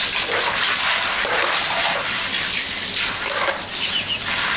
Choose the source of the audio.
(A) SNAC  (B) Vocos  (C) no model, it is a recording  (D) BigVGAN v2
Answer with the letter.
C